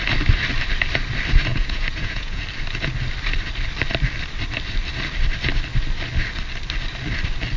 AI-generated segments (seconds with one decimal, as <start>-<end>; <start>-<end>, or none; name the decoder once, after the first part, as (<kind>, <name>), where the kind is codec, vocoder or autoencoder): 1.5-2.4 (vocoder, Vocos)